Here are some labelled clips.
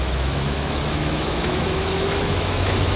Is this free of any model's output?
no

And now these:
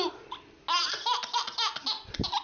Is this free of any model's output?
yes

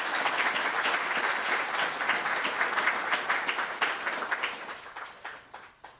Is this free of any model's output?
yes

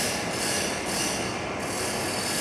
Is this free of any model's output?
yes